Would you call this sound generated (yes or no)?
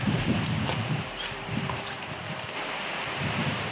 yes